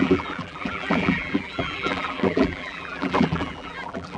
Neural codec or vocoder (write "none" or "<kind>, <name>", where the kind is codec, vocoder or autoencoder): vocoder, BigVGAN v2